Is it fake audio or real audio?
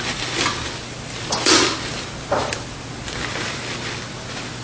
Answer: real